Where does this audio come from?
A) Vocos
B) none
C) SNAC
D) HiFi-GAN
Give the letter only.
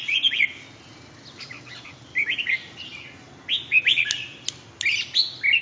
B